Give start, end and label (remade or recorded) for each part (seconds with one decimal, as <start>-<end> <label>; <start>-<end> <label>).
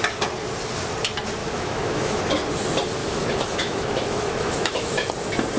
0.0-1.4 recorded; 1.4-2.2 remade; 2.2-3.0 recorded; 3.0-5.1 remade; 5.1-5.6 recorded